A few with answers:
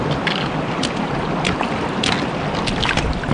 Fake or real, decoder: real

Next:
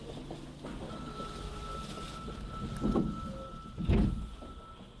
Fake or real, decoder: real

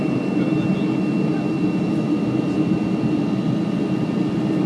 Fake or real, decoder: real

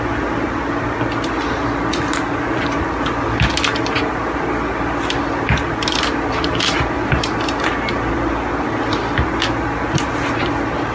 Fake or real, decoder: real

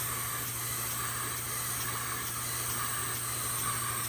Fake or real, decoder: real